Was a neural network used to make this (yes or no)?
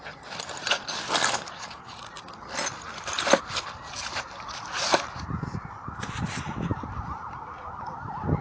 no